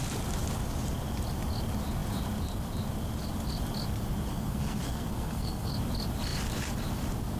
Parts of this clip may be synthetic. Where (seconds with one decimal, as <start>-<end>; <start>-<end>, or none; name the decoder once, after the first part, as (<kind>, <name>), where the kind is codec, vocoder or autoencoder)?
4.3-5.7 (codec, SNAC)